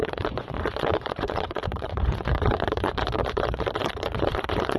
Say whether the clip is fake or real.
fake